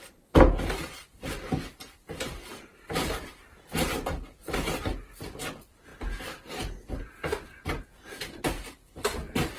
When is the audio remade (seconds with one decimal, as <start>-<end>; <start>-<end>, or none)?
none